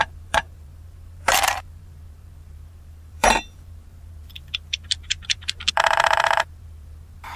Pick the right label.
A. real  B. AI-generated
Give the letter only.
B